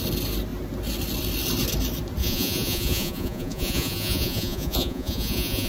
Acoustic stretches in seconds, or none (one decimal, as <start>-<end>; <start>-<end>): 0.0-2.2